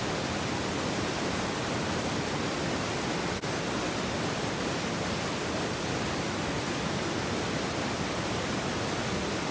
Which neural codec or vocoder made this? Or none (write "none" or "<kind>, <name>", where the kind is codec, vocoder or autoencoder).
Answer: none